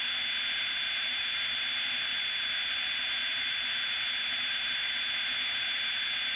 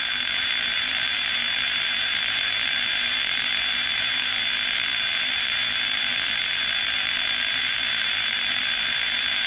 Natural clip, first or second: first